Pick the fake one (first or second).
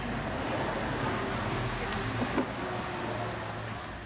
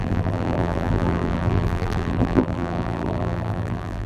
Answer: second